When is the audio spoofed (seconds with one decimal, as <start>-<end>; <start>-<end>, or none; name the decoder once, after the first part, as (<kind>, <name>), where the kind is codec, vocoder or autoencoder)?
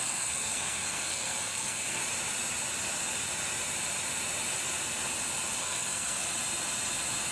0.0-2.0 (codec, SNAC); 5.6-6.2